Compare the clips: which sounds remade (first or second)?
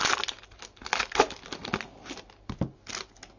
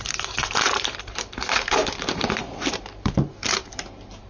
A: second